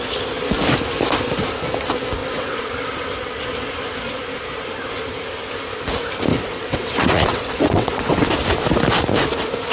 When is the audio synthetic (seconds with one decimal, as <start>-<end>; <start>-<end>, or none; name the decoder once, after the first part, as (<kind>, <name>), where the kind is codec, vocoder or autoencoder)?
2.2-2.9 (vocoder, WaveNeXt); 6.3-8.3